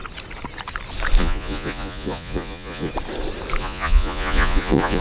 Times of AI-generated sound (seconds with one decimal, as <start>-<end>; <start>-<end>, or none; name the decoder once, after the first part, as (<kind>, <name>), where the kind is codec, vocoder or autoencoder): 1.2-2.9 (vocoder, Vocos); 3.6-5.0